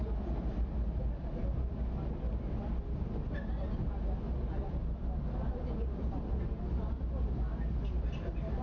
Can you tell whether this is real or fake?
real